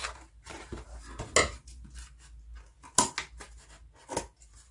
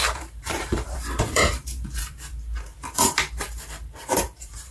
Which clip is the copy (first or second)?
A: second